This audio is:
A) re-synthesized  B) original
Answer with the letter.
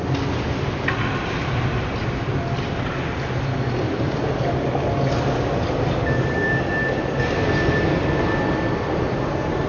B